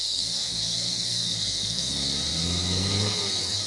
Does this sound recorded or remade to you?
remade